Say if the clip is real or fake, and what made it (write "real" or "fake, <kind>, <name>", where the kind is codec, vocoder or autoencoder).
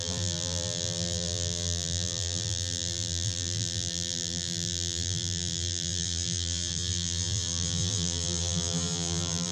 fake, vocoder, BigVGAN v2